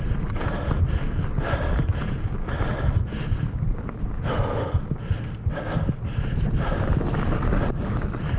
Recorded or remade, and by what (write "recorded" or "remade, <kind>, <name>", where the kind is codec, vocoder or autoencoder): recorded